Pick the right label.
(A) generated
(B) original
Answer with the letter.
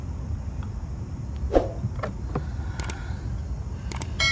B